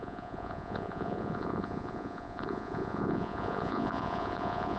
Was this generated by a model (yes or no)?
yes